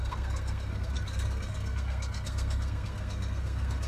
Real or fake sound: fake